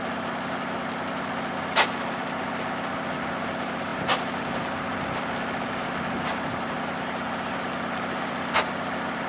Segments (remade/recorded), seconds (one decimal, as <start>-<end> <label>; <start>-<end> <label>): 0.0-9.3 recorded